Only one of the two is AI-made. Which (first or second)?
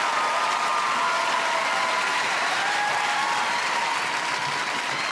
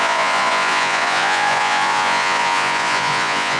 second